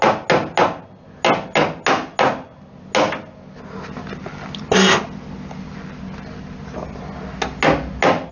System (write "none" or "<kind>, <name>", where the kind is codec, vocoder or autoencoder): none